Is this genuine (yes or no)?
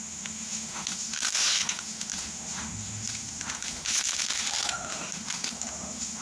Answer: no